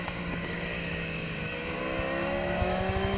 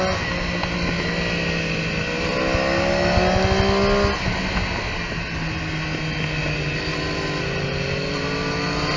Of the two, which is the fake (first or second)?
first